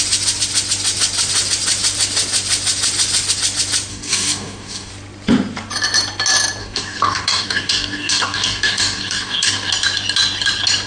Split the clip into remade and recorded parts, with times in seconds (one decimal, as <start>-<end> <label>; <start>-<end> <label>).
0.0-3.9 recorded; 3.9-4.9 remade; 4.9-6.6 recorded; 6.6-9.7 remade; 9.7-10.9 recorded